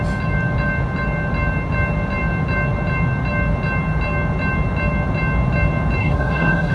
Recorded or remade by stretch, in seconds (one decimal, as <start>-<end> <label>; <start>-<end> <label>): 0.0-6.0 recorded; 6.0-6.7 remade